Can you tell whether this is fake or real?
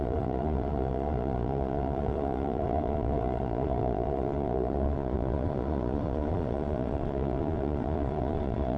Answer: fake